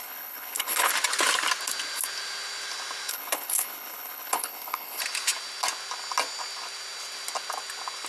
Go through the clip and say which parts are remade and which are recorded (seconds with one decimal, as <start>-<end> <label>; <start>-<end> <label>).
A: 0.0-0.9 remade; 0.9-3.1 recorded; 3.1-5.0 remade; 5.0-8.1 recorded